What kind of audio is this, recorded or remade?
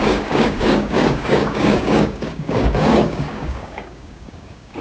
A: remade